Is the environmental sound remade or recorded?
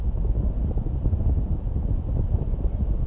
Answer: recorded